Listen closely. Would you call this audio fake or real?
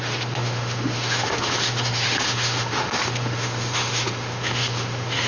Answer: fake